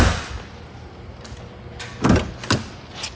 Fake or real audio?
real